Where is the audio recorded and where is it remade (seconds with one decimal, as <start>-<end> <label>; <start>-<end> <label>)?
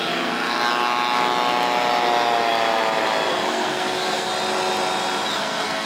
0.0-0.6 remade; 0.6-3.3 recorded; 3.3-4.3 remade; 4.3-5.3 recorded; 5.3-5.9 remade